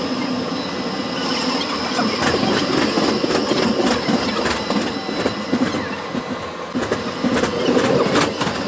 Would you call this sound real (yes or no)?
yes